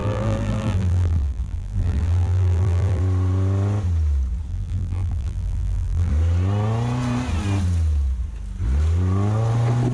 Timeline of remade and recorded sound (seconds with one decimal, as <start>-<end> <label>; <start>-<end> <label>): 0.0-3.0 remade; 3.0-4.5 recorded; 4.5-6.1 remade; 6.1-9.9 recorded